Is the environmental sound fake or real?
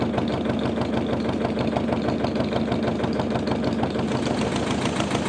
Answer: real